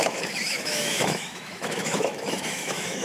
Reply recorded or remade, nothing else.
remade